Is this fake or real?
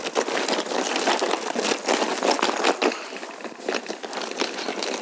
real